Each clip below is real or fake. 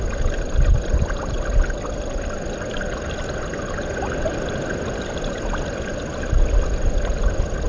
real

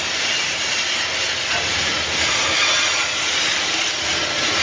real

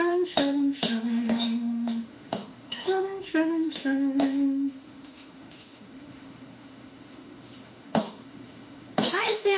fake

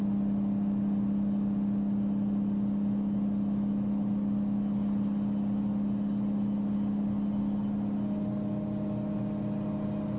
real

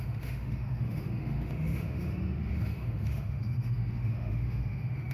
fake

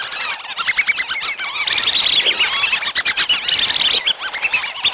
real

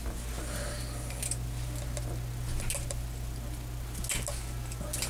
real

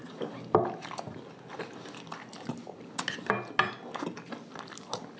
real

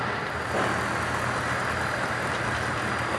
real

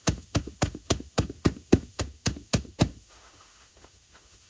fake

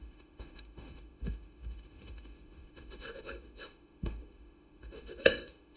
fake